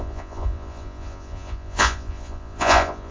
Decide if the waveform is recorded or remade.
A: remade